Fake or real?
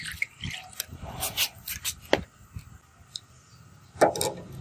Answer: real